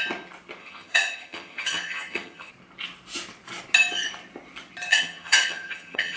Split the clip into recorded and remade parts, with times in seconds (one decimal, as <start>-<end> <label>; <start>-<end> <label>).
0.0-0.6 recorded; 0.6-2.5 remade; 2.5-4.9 recorded; 4.9-6.2 remade